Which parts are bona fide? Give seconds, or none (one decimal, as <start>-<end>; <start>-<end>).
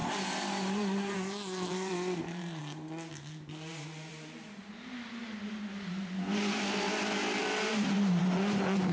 2.6-4.1; 4.6-7.4; 8.2-8.9